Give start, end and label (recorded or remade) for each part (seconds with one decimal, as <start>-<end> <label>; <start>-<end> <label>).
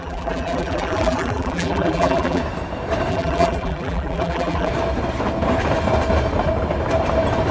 0.0-2.4 remade; 2.4-3.1 recorded; 3.1-4.7 remade; 4.7-7.5 recorded